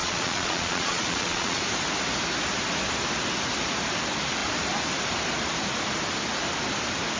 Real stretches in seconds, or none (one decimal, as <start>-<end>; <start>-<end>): 1.6-7.2